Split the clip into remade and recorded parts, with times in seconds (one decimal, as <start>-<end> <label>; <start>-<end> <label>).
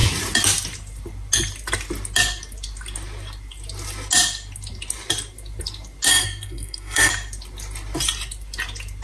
0.0-6.1 recorded; 6.1-7.1 remade; 7.1-9.0 recorded